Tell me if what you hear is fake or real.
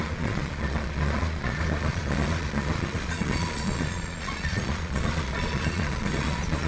fake